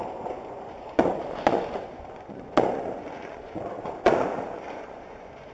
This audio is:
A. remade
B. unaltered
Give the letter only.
A